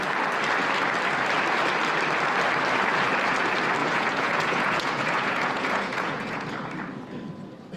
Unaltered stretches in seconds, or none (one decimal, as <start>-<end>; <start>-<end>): 0.0-3.8; 6.5-7.8